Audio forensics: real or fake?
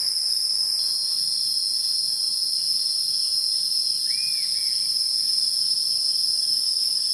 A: real